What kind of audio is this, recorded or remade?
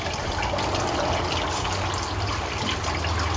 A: recorded